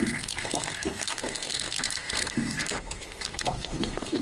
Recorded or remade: remade